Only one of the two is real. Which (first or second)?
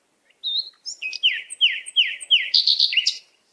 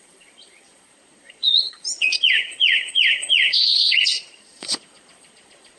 first